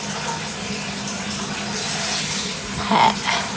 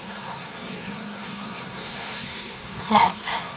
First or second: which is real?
first